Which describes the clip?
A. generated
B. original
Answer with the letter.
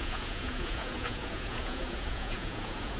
A